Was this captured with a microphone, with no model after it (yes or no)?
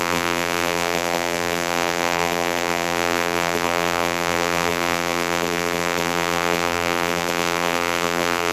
no